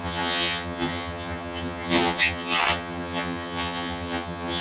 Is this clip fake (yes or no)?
yes